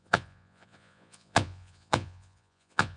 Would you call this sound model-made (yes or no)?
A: yes